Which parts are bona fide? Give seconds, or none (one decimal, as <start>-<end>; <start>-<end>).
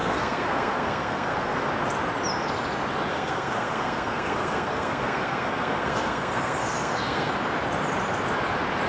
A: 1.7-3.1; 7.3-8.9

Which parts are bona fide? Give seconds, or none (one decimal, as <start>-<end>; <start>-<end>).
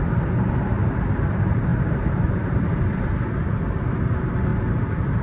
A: 0.0-1.7; 3.3-5.2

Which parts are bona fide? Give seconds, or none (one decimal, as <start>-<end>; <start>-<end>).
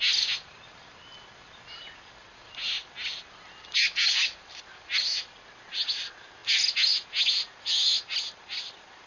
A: 0.0-9.1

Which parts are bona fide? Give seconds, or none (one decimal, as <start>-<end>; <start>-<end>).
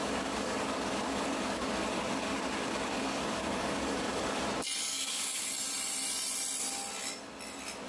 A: 4.4-4.9; 5.5-7.9